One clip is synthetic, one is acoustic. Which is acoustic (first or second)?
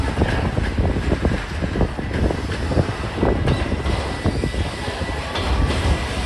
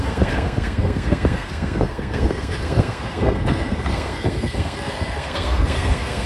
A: first